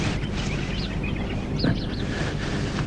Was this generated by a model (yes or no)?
no